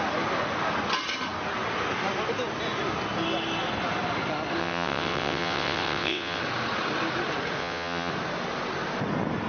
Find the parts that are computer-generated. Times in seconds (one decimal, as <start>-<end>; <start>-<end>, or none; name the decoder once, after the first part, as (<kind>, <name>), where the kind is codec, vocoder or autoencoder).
4.6-6.4 (vocoder, WaveNeXt); 7.6-8.1